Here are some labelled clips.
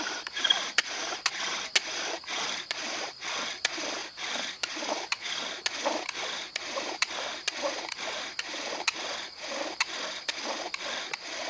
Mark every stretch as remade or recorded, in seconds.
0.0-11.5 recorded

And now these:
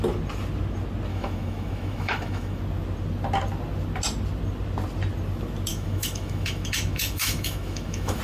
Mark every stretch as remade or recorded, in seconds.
0.0-1.1 recorded; 1.1-2.6 remade; 2.6-5.7 recorded; 5.7-8.2 remade

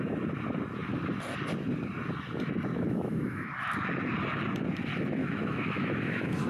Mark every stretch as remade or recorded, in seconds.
0.0-2.7 recorded; 2.7-3.5 remade; 3.5-5.2 recorded; 5.2-6.5 remade

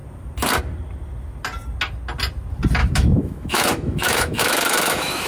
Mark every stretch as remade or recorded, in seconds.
0.0-2.8 recorded; 2.8-5.3 remade